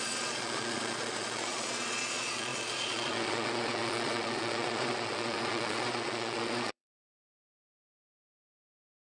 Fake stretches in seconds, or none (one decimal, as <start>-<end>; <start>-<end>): 0.0-9.0